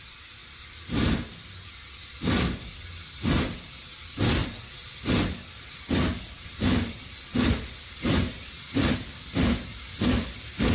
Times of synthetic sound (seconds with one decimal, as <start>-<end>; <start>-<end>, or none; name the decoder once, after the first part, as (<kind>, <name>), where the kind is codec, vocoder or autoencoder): none